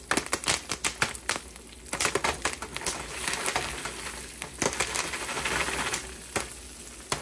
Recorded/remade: recorded